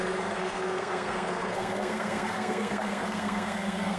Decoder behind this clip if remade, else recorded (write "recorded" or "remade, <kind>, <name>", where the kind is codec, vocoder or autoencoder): remade, codec, SNAC